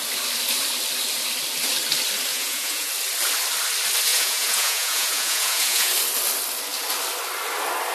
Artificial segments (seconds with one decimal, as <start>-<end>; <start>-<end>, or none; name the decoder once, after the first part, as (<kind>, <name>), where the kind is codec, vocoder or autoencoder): 2.3-2.9 (vocoder, Vocos); 4.1-5.9

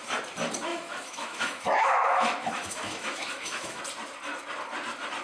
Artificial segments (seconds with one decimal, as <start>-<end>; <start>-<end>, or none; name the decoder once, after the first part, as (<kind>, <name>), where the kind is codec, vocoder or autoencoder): 0.7-3.8 (autoencoder, DAC-VAE)

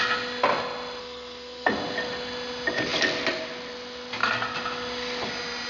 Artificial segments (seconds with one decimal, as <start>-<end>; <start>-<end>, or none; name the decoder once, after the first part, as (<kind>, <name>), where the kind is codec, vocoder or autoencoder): 1.0-1.7 (codec, SNAC)

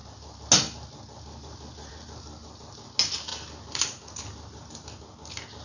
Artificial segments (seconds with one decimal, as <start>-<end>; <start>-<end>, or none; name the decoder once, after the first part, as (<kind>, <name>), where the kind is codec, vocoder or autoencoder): none

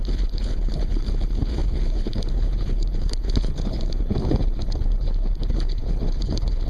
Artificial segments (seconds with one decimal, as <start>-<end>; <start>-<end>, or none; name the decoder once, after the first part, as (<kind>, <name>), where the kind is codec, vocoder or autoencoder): 0.0-6.7 (codec, HILCodec)

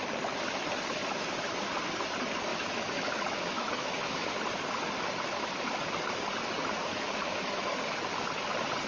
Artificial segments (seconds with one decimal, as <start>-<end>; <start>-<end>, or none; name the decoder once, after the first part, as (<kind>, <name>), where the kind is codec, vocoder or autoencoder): 2.5-4.3 (autoencoder, DAC-VAE); 6.9-7.8

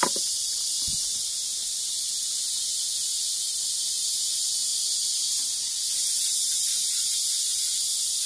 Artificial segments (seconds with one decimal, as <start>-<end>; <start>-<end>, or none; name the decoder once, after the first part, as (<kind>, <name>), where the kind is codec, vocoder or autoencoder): none